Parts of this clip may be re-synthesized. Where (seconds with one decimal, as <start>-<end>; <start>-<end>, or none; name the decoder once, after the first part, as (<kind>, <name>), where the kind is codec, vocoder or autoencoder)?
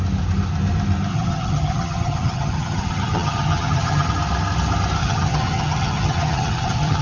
1.1-4.1 (vocoder, HiFi-GAN); 5.0-7.0